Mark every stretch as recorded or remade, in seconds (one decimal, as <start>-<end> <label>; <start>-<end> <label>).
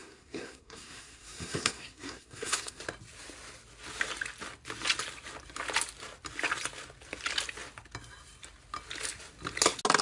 0.0-2.8 remade; 2.8-10.0 recorded